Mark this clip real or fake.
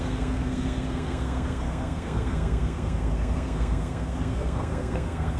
fake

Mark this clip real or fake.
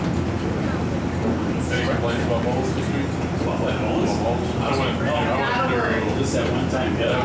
real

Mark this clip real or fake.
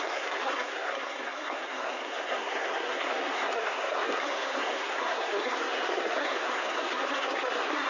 fake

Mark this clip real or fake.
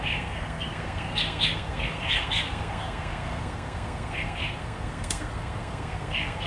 fake